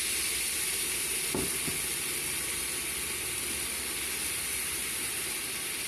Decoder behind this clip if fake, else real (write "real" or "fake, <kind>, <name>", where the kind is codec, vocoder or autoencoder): fake, vocoder, BigVGAN v2